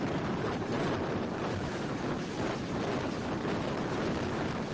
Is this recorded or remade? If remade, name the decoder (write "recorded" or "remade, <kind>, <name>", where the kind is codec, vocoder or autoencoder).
recorded